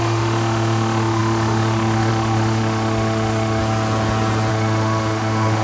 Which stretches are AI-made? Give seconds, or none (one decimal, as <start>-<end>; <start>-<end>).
0.0-3.6; 4.5-5.6